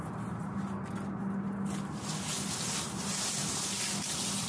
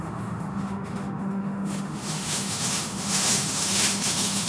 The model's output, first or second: second